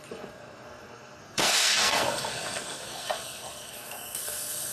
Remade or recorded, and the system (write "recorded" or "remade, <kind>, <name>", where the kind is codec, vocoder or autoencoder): remade, codec, SNAC